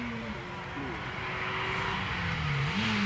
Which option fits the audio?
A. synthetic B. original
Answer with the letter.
B